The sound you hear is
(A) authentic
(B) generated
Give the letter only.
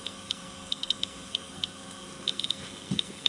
B